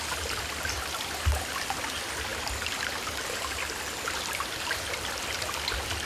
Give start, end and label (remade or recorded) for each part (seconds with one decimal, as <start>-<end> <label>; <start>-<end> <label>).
0.0-6.1 recorded